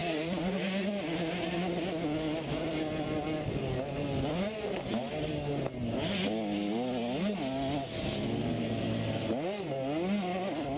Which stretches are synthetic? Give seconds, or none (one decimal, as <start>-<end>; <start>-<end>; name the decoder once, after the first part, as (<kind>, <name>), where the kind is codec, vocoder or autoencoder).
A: 0.0-0.5 (vocoder, Vocos)